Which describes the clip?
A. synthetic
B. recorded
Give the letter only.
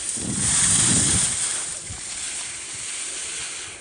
B